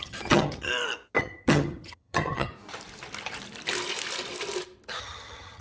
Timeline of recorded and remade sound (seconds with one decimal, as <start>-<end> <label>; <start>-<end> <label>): 0.0-0.7 remade; 0.7-1.2 recorded; 1.2-2.5 remade; 2.5-5.0 recorded; 5.0-5.6 remade